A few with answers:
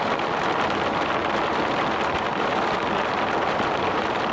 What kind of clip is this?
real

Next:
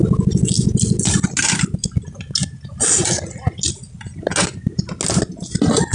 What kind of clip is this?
real